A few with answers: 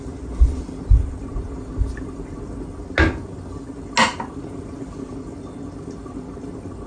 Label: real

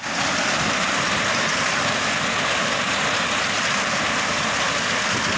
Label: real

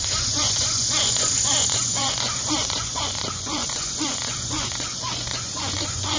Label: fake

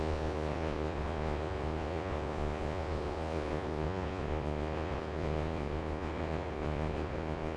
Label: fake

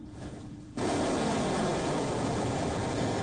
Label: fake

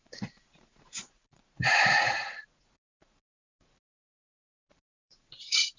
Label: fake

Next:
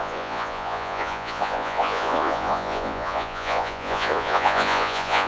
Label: fake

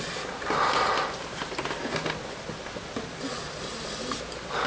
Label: real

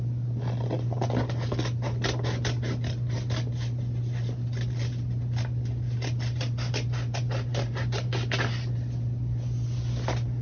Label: real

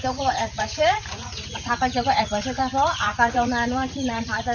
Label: fake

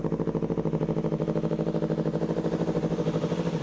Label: real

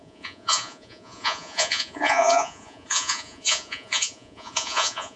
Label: fake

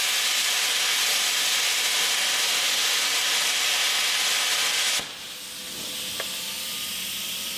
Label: real